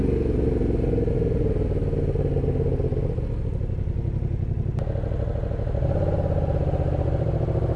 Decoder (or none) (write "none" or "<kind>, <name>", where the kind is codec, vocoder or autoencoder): none